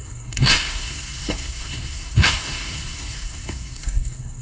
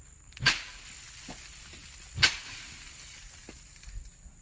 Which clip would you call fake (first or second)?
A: first